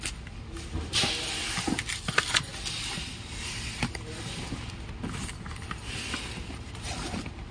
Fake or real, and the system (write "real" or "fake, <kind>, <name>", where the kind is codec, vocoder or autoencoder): real